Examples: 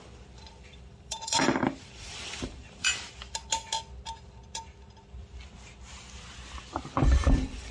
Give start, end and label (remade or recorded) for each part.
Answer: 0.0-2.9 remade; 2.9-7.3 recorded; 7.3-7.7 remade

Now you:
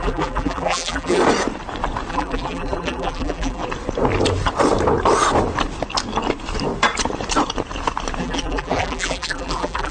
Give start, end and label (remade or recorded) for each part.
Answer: 0.0-1.2 remade; 1.2-2.1 recorded; 2.1-3.6 remade; 3.6-8.2 recorded; 8.2-9.9 remade

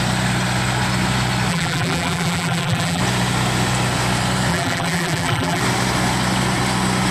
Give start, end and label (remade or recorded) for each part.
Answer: 0.0-1.5 recorded; 1.5-3.0 remade; 3.0-4.5 recorded; 4.5-5.6 remade; 5.6-7.1 recorded